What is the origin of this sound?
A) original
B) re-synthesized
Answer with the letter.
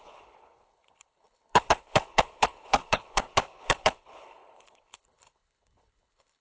B